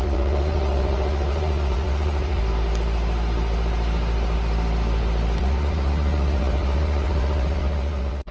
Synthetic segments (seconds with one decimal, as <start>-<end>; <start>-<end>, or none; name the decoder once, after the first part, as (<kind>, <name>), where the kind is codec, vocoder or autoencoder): 0.0-2.4 (vocoder, Vocos); 5.4-8.3